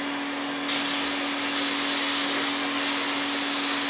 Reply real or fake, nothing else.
real